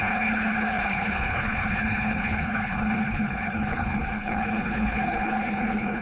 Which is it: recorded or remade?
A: remade